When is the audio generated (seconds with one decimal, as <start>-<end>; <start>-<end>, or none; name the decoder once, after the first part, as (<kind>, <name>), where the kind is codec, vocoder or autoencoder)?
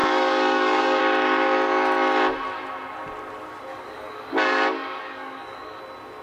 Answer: 0.0-1.0 (codec, DAC); 3.7-5.8